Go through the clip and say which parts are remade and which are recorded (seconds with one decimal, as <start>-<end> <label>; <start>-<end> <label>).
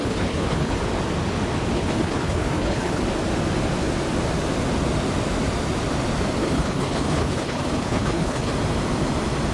0.0-0.8 remade; 0.8-1.7 recorded; 1.7-3.0 remade; 3.0-6.4 recorded; 6.4-8.5 remade; 8.5-9.5 recorded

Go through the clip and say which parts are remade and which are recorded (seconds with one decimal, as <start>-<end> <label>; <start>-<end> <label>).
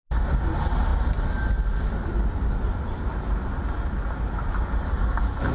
0.0-5.5 recorded